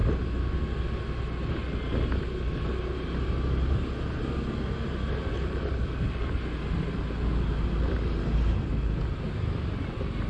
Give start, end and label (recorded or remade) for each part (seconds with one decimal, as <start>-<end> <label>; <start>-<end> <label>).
0.0-10.3 recorded